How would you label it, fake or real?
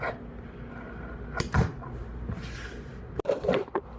real